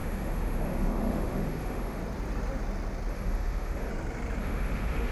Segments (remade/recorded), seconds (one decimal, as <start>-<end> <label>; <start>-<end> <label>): 0.0-2.0 remade; 2.0-3.1 recorded; 3.1-3.9 remade; 3.9-4.4 recorded; 4.4-5.1 remade